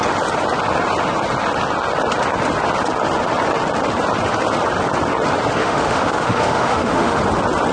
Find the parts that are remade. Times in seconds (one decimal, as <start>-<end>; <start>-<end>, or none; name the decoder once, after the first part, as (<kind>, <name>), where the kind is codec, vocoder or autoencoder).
5.6-7.2 (autoencoder, DAC-VAE)